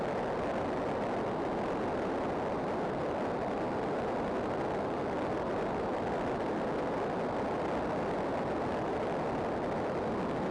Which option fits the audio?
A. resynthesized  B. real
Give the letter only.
B